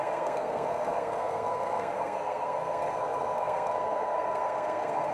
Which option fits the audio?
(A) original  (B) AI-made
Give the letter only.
B